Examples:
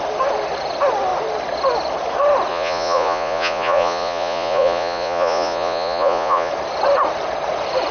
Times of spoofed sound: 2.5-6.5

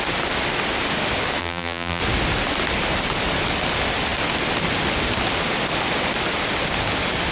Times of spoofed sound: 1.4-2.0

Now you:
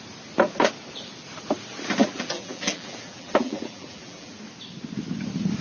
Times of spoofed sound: 2.0-4.3

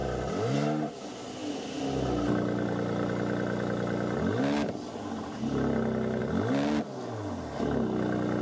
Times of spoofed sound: none

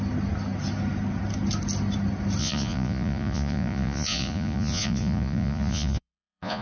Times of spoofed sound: 2.4-6.6

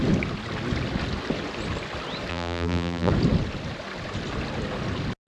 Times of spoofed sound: 2.3-3.1